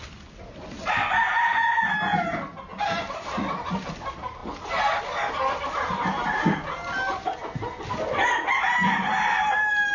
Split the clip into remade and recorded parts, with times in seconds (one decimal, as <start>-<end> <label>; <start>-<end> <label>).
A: 0.0-1.2 remade; 1.2-2.7 recorded; 2.7-3.9 remade; 3.9-7.4 recorded; 7.4-8.3 remade; 8.3-9.9 recorded